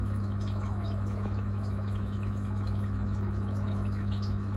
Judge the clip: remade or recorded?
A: remade